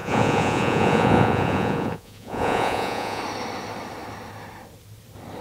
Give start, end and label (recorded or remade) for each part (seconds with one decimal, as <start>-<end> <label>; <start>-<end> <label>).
0.0-3.2 remade; 3.2-5.4 recorded